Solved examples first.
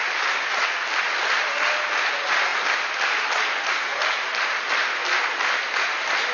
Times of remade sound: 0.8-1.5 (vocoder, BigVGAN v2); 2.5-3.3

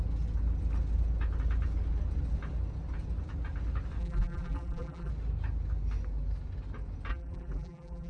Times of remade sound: 4.0-5.1 (vocoder, BigVGAN v2); 7.1-8.1

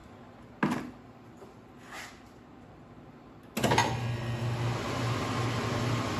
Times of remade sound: 3.8-4.6 (vocoder, BigVGAN v2)